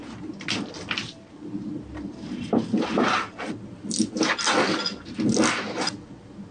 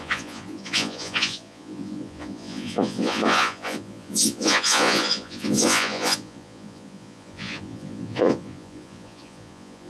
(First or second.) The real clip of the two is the first